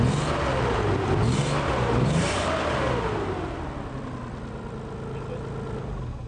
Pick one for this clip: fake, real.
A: real